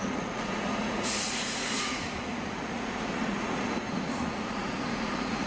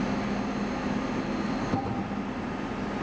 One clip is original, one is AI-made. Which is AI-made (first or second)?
first